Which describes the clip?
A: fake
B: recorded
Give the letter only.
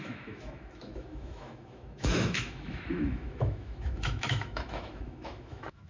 A